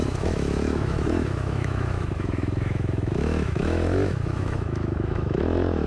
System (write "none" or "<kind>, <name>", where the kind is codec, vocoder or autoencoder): autoencoder, DAC-VAE